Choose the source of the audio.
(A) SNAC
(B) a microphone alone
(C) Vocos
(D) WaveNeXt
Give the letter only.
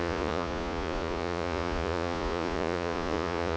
C